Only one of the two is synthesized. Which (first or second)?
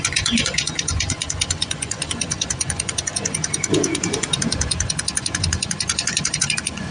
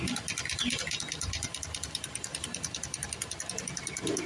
first